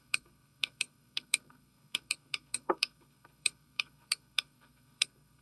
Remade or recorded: remade